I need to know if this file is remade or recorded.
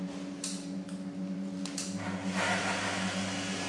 recorded